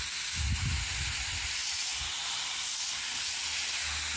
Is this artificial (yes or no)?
no